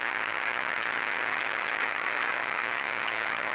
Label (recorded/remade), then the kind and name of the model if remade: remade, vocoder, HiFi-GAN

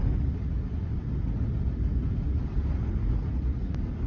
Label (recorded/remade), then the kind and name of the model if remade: recorded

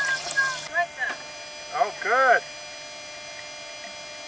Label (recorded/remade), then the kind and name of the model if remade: recorded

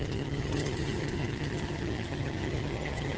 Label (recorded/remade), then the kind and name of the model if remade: remade, vocoder, HiFi-GAN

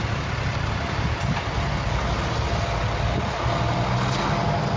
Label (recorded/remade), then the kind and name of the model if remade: recorded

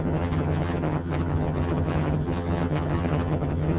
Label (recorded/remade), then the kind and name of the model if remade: remade, vocoder, HiFi-GAN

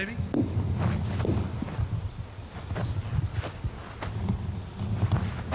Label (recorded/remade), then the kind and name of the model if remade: recorded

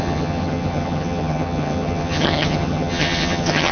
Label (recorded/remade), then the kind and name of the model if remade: remade, vocoder, HiFi-GAN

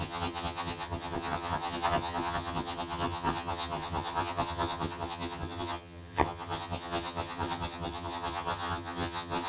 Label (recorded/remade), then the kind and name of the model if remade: remade, vocoder, HiFi-GAN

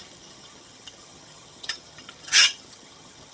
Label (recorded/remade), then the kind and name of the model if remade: remade, vocoder, HiFi-GAN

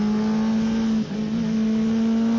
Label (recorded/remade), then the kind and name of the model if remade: recorded